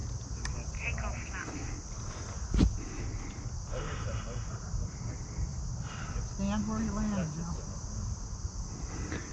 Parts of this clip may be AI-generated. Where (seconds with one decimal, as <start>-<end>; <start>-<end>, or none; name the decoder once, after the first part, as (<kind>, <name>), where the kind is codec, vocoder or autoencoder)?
none